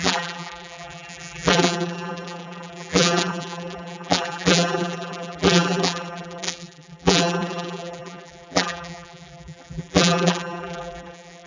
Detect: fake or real fake